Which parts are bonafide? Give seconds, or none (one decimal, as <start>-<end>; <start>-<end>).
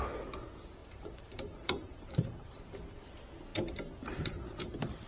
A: 0.0-0.8; 2.7-3.5